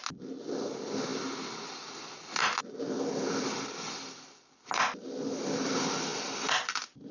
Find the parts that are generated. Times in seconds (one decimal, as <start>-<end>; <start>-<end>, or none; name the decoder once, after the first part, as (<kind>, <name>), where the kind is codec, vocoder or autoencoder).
none